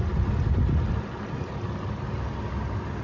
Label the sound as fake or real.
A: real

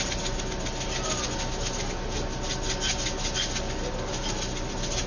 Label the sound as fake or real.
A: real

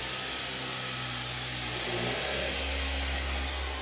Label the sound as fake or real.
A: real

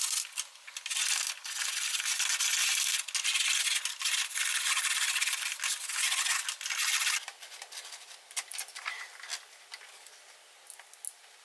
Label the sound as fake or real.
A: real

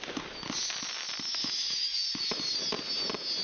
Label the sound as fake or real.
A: real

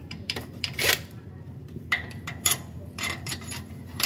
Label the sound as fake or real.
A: fake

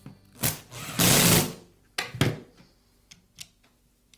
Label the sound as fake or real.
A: real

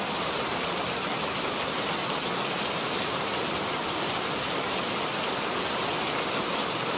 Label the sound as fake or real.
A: real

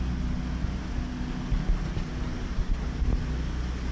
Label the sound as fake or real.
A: real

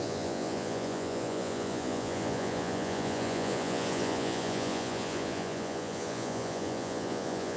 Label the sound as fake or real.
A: fake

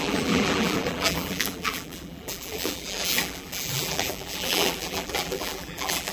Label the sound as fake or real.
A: fake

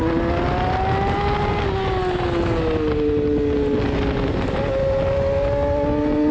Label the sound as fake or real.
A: real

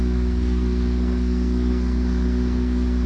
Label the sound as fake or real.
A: fake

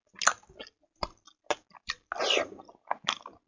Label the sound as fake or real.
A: real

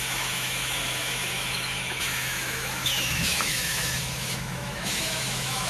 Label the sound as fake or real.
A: fake